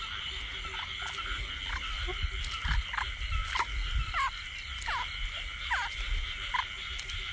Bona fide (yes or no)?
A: yes